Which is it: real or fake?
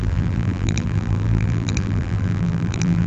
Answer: fake